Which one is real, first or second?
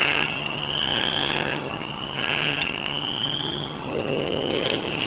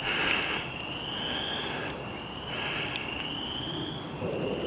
second